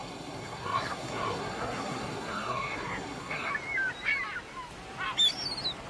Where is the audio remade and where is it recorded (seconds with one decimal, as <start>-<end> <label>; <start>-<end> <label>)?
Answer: 0.0-3.5 remade; 3.5-5.9 recorded